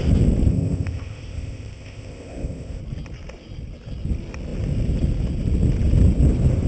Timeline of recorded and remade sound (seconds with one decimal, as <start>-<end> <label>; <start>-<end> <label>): 0.0-0.5 recorded; 0.5-2.8 remade; 2.8-6.7 recorded